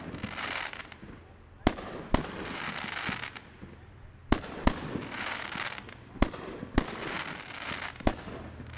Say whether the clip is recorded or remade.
recorded